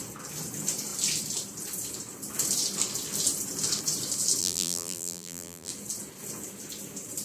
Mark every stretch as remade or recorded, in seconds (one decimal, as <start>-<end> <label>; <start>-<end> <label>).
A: 0.0-4.4 recorded; 4.4-5.7 remade; 5.7-7.2 recorded